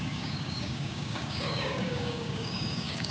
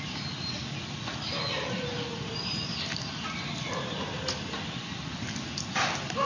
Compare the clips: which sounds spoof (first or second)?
first